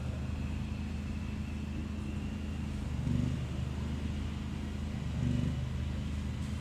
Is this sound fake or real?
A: real